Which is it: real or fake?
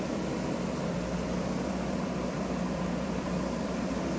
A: fake